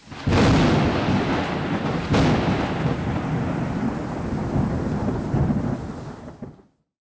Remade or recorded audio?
recorded